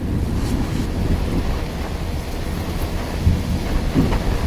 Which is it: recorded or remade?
recorded